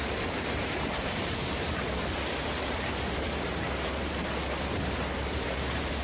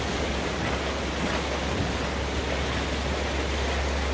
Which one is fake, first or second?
first